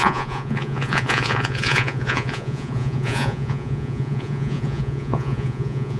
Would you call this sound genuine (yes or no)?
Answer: no